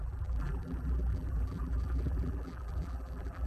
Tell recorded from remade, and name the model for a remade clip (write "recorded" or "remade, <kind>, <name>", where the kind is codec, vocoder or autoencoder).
remade, vocoder, BigVGAN v2